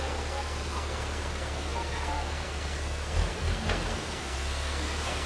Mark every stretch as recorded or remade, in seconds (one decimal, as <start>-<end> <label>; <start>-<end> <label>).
0.0-5.3 remade